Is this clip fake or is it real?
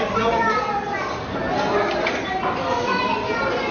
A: real